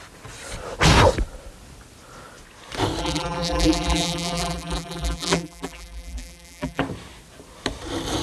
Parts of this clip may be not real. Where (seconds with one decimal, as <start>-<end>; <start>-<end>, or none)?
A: 3.0-6.8